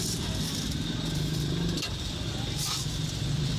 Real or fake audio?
real